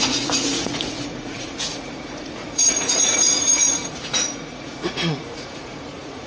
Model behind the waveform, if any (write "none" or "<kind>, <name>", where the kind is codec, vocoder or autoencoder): vocoder, Vocos